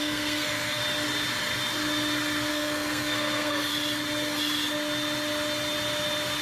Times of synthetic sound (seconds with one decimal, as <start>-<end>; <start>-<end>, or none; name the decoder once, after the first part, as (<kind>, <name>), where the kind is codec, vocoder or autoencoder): 0.0-0.8 (codec, SNAC); 2.5-3.7